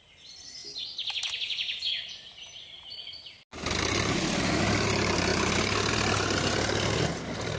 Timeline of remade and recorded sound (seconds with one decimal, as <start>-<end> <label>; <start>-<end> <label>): 0.0-7.6 recorded